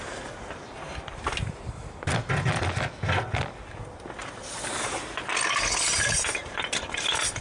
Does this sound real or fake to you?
fake